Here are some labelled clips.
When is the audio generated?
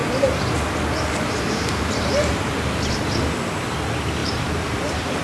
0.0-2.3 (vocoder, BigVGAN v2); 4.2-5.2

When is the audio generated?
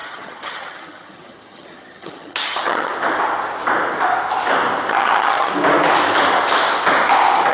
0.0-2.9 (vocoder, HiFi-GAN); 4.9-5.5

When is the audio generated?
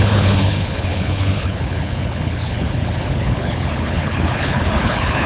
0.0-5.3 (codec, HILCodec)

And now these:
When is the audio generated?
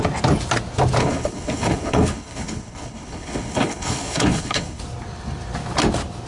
1.0-4.8 (codec, HILCodec)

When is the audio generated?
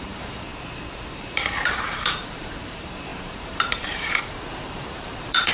0.0-0.5 (vocoder, BigVGAN v2); 1.1-5.5